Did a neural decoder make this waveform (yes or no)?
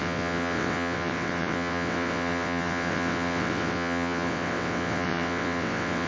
yes